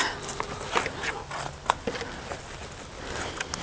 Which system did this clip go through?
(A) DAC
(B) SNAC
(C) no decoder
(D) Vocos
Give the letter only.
C